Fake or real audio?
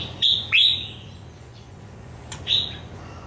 fake